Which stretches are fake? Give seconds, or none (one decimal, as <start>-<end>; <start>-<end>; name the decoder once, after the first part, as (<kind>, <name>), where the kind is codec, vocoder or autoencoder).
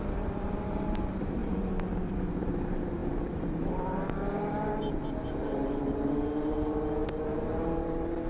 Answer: 0.0-8.3 (vocoder, BigVGAN v2)